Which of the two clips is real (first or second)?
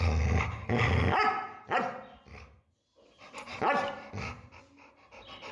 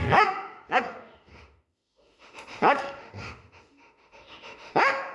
first